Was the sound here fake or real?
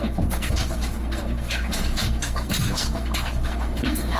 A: fake